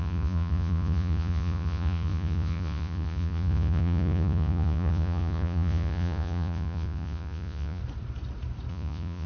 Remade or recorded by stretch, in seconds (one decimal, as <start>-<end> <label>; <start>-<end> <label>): 0.0-7.8 remade; 7.8-8.7 recorded; 8.7-9.3 remade